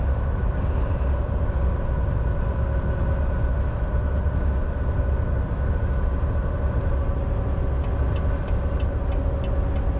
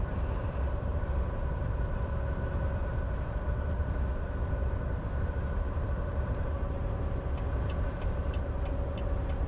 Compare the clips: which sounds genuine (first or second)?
first